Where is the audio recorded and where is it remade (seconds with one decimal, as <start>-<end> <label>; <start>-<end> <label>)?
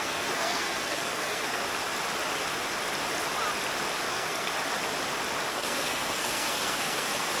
0.0-1.6 remade; 1.6-4.1 recorded; 4.1-4.5 remade; 4.5-5.5 recorded; 5.5-7.4 remade